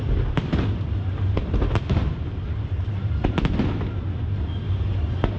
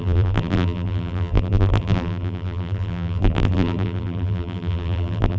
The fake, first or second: second